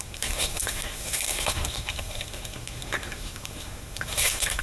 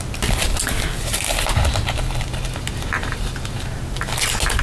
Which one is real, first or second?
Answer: second